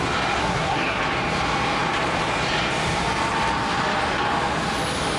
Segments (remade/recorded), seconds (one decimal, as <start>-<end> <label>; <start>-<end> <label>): 0.0-0.4 recorded; 0.4-1.0 remade; 1.0-5.2 recorded